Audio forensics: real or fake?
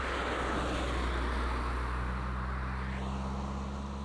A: real